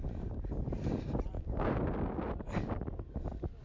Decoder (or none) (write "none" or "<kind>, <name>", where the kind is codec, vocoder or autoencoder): none